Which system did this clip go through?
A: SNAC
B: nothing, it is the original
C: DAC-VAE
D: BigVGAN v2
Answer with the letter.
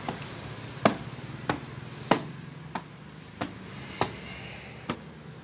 B